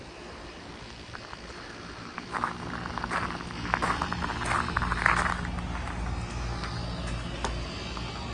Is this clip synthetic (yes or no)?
no